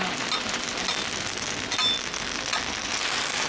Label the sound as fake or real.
real